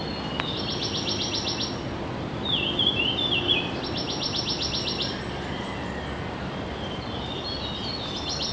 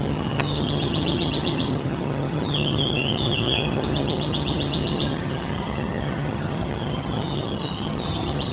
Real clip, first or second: first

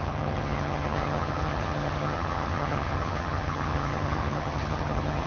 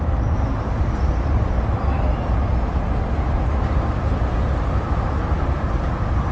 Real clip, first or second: second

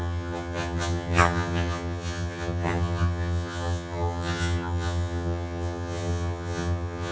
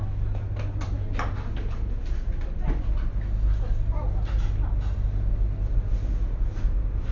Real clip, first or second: second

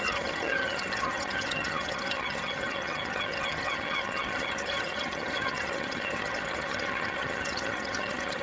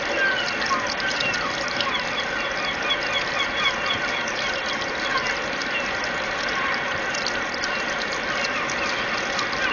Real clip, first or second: second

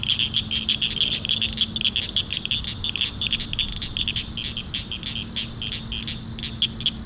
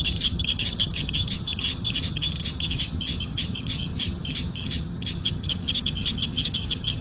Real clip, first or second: first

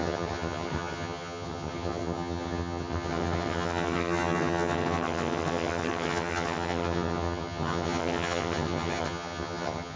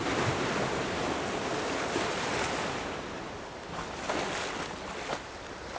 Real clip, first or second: second